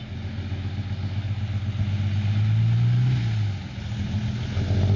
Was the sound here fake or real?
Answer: real